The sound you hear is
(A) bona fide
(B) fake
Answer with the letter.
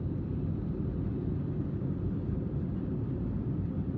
A